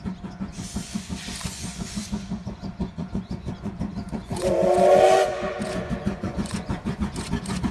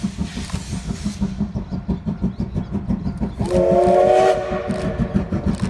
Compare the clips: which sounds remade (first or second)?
first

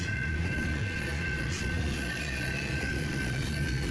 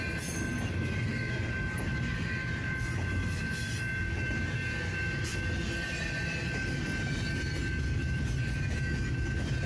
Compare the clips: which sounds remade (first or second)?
first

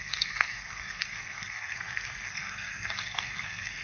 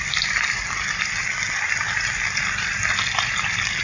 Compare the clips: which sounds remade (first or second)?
first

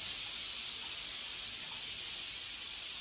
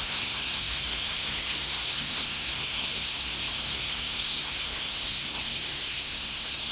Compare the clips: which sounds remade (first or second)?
second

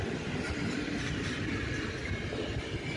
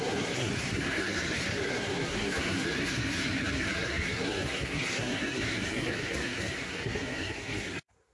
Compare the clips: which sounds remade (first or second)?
second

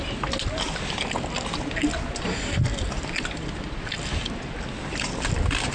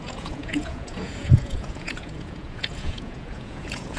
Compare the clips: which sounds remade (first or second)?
second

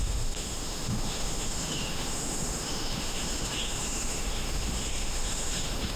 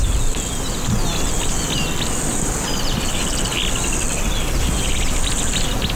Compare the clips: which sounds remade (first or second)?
first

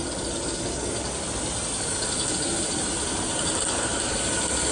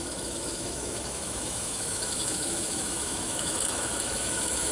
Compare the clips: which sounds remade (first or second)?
second